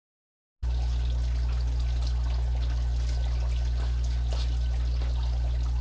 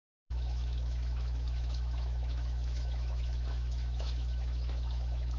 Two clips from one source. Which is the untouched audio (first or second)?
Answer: first